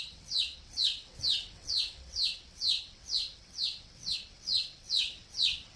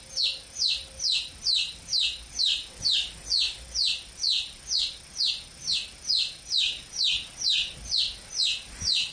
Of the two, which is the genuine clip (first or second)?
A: second